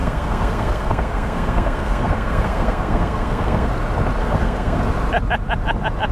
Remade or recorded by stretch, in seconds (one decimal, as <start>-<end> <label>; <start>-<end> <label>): 0.0-3.7 remade; 3.7-4.2 recorded; 4.2-4.8 remade; 4.8-6.1 recorded